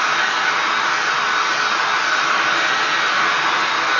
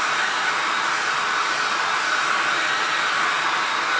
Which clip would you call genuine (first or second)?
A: first